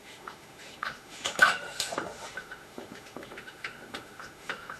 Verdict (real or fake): fake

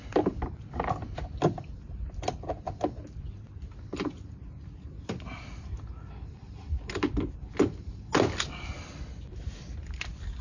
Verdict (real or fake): real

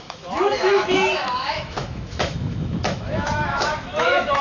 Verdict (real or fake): fake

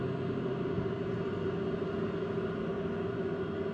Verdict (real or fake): real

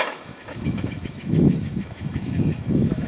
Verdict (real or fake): fake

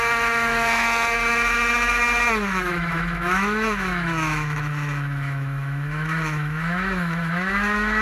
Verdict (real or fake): fake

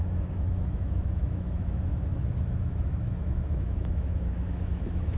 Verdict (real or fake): fake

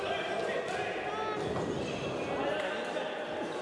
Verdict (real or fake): real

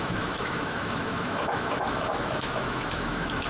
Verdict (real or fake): fake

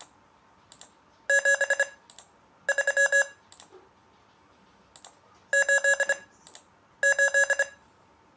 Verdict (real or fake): real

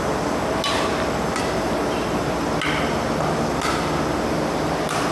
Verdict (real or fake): real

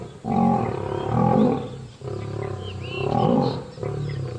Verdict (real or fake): real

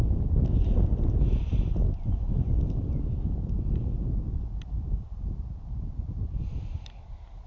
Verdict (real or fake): real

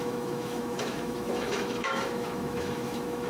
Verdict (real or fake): fake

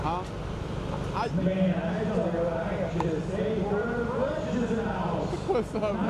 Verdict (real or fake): real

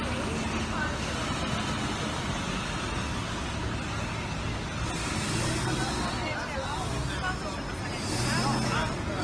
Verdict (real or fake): real